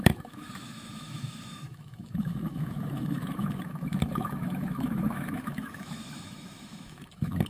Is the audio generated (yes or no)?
yes